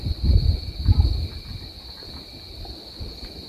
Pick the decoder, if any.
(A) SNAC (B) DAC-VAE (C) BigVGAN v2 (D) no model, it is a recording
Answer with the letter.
D